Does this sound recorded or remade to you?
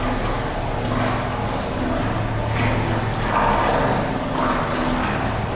recorded